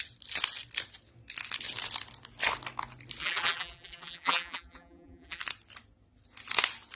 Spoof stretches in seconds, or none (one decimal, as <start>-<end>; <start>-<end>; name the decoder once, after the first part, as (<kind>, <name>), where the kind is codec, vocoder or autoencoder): 3.2-5.4 (vocoder, BigVGAN v2)